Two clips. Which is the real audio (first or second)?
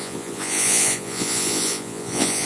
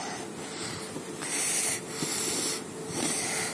second